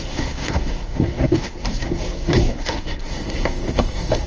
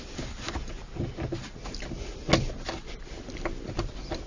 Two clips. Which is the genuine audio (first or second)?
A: second